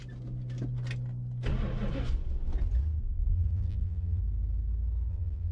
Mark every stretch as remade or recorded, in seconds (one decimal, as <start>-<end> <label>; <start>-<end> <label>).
0.0-3.3 recorded; 3.3-4.2 remade; 4.2-5.1 recorded; 5.1-5.5 remade